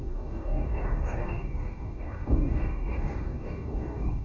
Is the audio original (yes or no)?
no